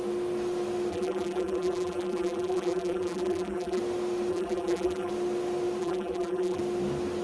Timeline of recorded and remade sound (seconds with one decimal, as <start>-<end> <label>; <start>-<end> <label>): 0.0-0.9 recorded; 0.9-3.8 remade; 3.8-4.3 recorded; 4.3-5.1 remade; 5.1-5.8 recorded; 5.8-6.6 remade; 6.6-7.2 recorded